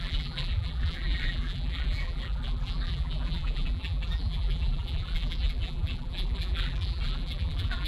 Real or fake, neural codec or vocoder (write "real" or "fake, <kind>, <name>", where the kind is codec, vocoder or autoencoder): fake, vocoder, BigVGAN v2